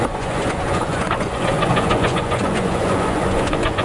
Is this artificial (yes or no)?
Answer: yes